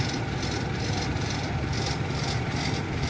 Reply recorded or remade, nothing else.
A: remade